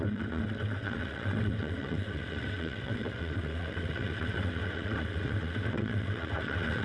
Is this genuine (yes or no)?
no